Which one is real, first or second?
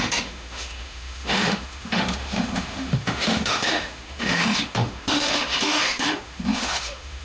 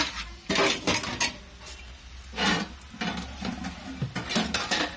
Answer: second